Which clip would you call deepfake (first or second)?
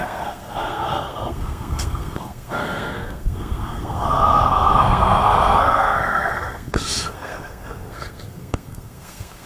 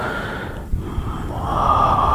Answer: first